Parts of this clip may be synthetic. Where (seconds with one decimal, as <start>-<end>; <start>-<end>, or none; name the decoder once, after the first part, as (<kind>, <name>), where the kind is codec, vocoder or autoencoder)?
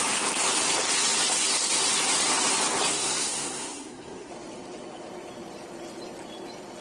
2.9-4.3 (codec, SNAC)